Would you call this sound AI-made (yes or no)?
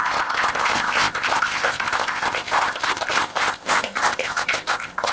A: yes